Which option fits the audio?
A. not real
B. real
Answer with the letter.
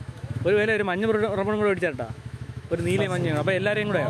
A